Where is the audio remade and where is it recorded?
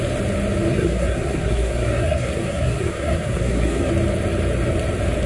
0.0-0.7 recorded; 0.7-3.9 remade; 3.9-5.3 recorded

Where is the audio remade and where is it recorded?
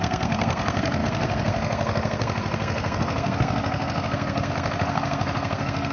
0.0-5.9 remade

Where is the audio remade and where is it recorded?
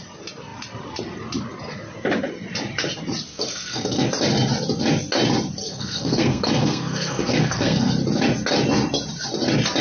0.0-3.3 recorded; 3.3-4.1 remade; 4.1-5.6 recorded; 5.6-7.9 remade; 7.9-9.8 recorded